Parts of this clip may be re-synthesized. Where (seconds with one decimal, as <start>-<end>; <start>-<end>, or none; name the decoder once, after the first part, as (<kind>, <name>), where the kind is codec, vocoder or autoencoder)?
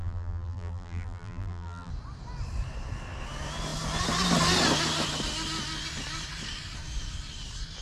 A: 0.0-1.9 (vocoder, BigVGAN v2)